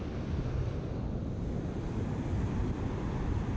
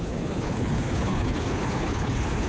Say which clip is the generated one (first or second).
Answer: second